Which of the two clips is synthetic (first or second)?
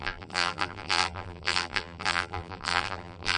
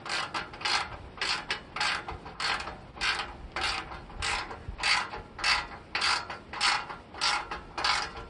first